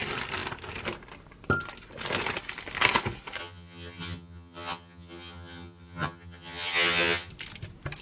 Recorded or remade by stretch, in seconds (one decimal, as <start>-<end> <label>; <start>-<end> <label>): 0.0-3.4 recorded; 3.4-7.3 remade; 7.3-8.0 recorded